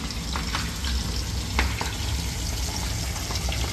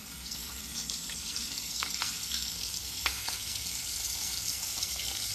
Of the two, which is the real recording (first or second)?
first